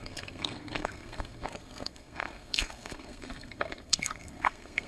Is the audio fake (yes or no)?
yes